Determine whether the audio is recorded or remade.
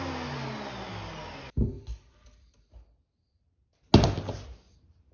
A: recorded